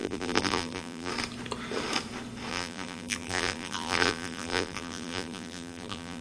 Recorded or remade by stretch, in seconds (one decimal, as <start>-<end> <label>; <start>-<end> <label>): 0.0-1.1 remade; 1.1-2.5 recorded; 2.5-6.2 remade